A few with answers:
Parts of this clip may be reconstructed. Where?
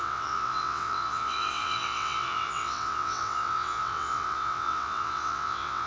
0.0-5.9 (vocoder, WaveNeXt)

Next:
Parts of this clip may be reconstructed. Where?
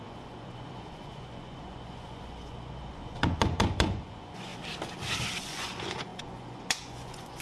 0.0-4.5 (vocoder, Vocos); 5.4-7.4